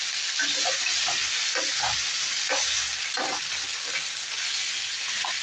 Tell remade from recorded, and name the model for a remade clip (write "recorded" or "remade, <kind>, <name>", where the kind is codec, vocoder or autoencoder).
recorded